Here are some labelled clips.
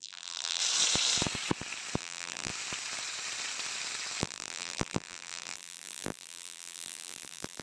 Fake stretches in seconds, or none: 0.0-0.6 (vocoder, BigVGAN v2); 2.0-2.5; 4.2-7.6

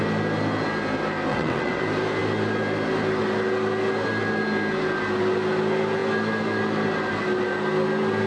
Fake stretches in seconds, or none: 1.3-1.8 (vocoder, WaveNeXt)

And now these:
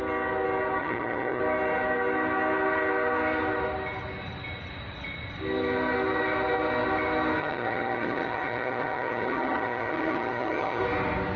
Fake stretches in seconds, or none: 0.8-1.4 (vocoder, HiFi-GAN); 7.4-10.8

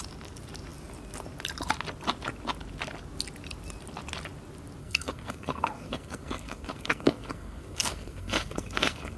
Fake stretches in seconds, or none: 4.8-9.2 (codec, SNAC)